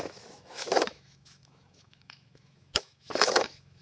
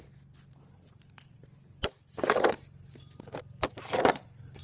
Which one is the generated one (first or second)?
first